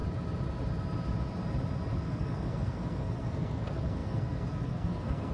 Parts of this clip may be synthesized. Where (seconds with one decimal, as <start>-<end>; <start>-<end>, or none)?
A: 2.0-5.3